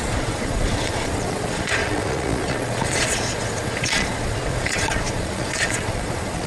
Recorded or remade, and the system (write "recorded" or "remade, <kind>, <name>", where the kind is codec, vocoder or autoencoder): remade, vocoder, Vocos